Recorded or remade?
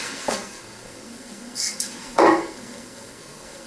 remade